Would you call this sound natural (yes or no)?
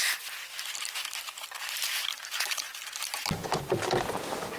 yes